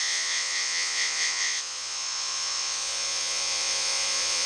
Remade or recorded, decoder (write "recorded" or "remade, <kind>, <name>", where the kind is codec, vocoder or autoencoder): remade, vocoder, Vocos